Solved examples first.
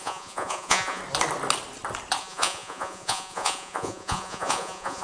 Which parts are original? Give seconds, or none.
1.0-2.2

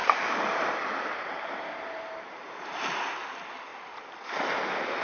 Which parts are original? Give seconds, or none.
3.0-5.0

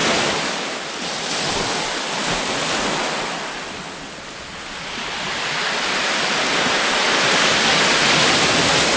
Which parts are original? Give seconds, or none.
0.0-9.0

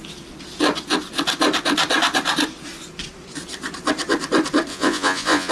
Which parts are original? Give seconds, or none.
0.0-4.7

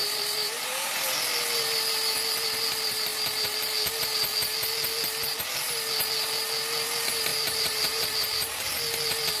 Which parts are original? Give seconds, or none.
1.0-7.3; 8.7-9.4

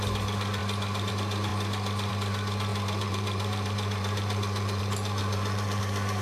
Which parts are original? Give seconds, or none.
0.0-2.7; 4.8-5.2; 5.8-6.2

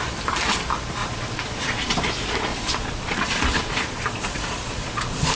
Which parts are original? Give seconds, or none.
0.0-1.0; 1.9-2.5

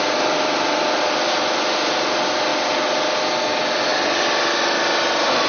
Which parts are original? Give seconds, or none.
0.0-5.5